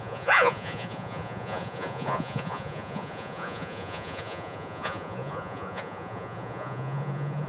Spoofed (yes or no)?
yes